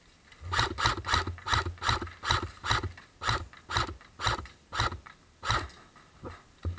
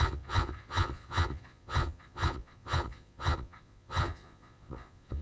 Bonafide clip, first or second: first